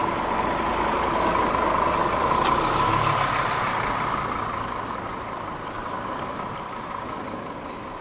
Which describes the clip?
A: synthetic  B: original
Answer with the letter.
B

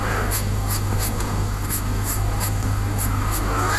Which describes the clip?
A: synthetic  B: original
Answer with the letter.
A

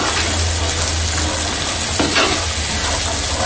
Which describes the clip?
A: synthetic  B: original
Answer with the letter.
B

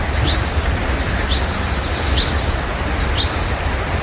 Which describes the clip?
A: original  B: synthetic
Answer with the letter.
A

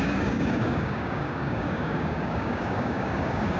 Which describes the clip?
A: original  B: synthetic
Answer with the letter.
B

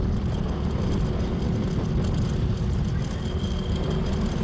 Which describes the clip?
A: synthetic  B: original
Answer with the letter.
B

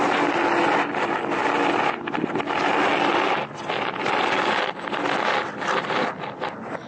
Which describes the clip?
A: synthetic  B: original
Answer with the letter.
B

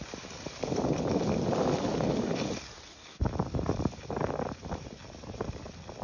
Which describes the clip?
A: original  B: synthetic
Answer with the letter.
A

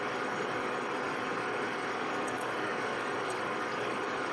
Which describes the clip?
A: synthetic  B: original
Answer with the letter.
A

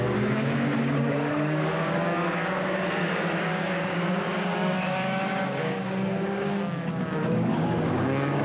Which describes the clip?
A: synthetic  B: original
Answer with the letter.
A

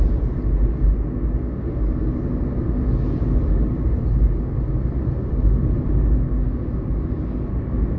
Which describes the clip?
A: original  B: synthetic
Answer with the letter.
A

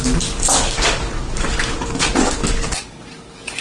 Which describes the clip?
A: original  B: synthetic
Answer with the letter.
B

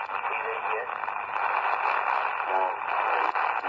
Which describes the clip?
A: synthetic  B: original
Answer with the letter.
B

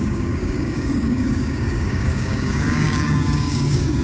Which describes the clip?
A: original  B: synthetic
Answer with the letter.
B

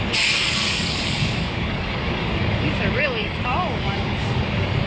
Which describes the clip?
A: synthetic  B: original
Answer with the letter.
A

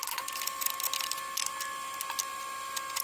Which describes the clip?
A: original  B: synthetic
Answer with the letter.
A